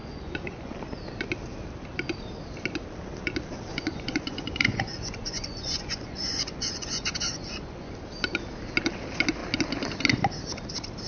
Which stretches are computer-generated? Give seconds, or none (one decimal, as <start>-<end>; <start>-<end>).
0.0-0.7; 3.7-7.9